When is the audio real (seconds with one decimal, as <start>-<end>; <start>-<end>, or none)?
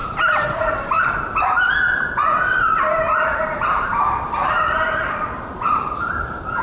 0.9-3.3